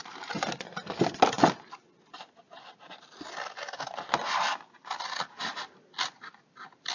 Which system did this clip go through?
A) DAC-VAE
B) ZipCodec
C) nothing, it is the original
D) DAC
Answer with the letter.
C